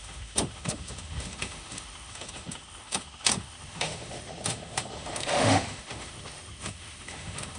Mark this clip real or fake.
fake